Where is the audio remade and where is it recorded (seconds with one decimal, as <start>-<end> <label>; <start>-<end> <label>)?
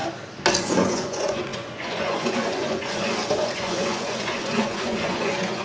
0.0-0.6 recorded; 0.6-5.6 remade